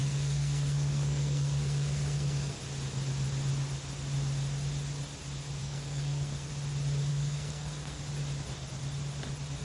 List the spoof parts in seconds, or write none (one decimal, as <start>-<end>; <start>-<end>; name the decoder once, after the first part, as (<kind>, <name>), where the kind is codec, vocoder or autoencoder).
0.0-2.6 (codec, SNAC); 5.6-6.5; 7.1-8.0